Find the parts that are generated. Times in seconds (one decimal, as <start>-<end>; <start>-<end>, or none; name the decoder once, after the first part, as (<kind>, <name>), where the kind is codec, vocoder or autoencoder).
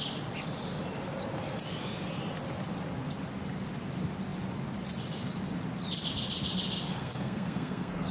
6.9-8.1 (codec, SNAC)